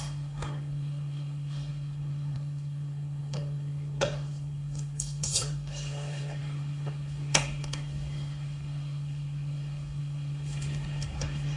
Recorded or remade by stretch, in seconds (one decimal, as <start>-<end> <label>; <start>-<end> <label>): 0.0-11.6 remade